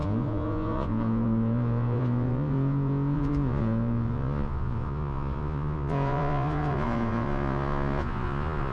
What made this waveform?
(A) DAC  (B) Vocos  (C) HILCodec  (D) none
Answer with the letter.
B